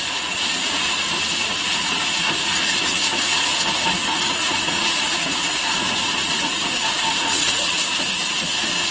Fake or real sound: fake